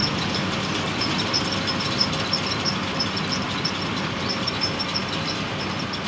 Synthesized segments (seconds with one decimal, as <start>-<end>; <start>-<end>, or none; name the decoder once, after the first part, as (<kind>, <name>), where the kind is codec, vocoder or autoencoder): none